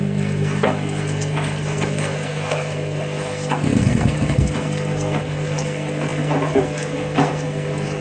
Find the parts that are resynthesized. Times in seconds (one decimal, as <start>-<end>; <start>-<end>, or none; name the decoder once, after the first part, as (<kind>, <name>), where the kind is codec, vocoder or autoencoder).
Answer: 0.0-8.0 (codec, SNAC)